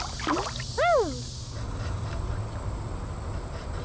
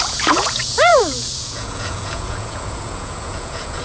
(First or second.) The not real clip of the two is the second